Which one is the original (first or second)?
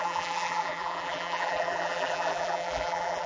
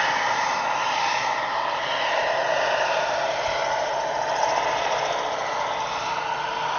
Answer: second